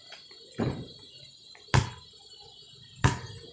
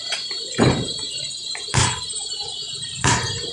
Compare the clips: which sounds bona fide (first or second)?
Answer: first